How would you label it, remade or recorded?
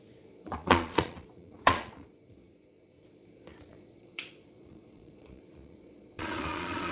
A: remade